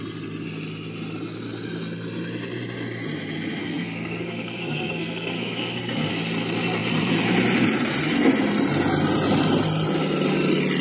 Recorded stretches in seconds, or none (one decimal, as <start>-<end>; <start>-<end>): 0.0-3.6; 6.1-10.8